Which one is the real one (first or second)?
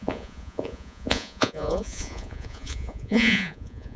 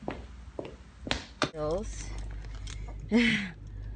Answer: second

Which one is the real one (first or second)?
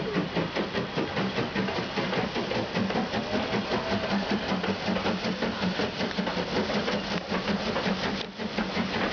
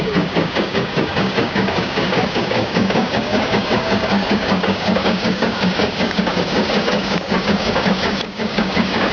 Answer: first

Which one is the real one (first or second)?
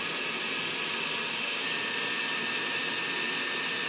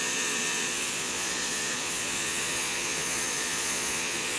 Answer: first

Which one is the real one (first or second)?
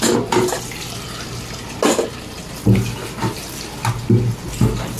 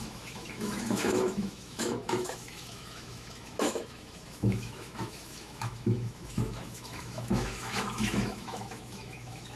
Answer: first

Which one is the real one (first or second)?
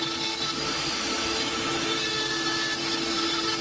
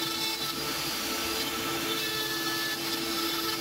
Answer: second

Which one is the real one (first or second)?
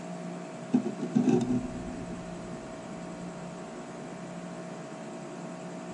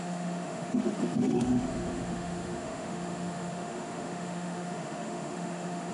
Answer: first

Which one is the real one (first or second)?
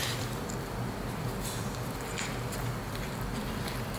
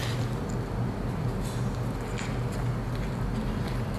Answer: second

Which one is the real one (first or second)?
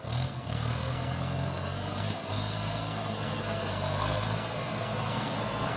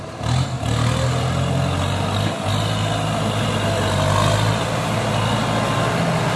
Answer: second